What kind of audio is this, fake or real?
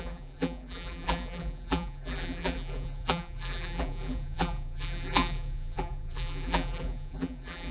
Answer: fake